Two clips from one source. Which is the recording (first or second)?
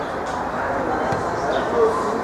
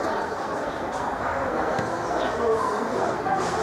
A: first